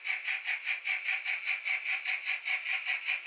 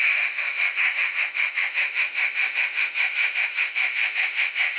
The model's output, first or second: second